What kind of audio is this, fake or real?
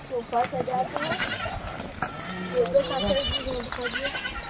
real